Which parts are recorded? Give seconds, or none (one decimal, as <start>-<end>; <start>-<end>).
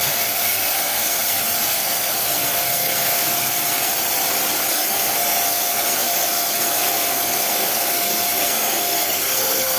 3.9-4.7